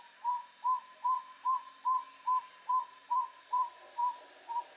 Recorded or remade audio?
recorded